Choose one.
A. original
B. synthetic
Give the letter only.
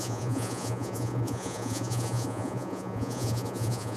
B